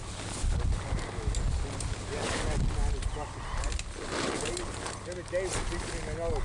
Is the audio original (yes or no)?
yes